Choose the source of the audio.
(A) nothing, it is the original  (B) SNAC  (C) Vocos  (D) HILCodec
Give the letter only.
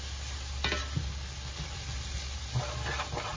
A